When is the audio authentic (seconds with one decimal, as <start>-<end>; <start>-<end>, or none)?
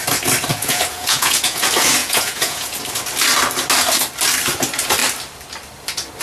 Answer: 0.0-0.5; 1.6-2.0; 2.8-6.2